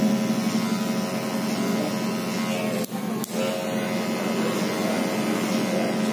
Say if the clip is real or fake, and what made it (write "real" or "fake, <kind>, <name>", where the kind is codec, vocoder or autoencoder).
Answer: real